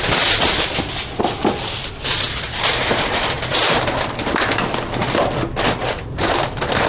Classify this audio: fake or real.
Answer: real